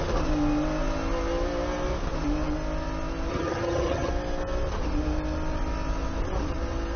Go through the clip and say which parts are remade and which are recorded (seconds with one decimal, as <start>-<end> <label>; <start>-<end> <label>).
0.0-3.3 recorded; 3.3-4.1 remade; 4.1-7.0 recorded